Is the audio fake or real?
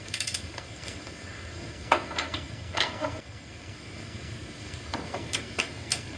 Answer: fake